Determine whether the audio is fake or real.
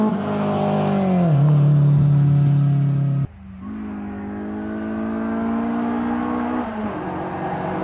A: real